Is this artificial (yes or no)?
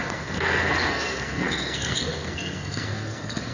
yes